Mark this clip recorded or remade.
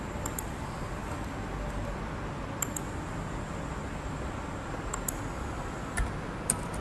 recorded